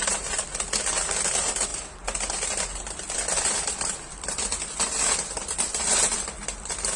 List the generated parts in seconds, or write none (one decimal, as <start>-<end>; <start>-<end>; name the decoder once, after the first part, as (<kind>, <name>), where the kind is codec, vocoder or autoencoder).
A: none